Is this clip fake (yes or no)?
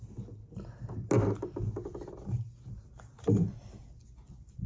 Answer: no